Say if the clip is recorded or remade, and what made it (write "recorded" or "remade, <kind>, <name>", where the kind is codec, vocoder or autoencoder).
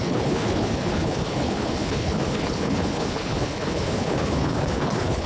remade, codec, HILCodec